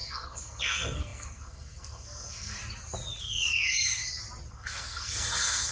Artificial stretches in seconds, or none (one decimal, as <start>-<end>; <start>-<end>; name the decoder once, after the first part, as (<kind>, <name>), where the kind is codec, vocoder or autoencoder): 0.0-2.6 (codec, SNAC); 3.2-4.0; 4.5-5.7